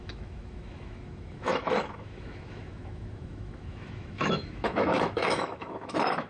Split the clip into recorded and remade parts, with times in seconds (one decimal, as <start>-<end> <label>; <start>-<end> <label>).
0.0-6.3 remade